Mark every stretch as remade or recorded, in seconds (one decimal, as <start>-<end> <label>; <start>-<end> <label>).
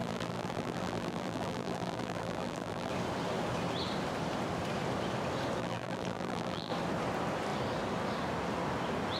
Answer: 0.0-2.9 remade; 2.9-5.6 recorded; 5.6-6.7 remade; 6.7-9.2 recorded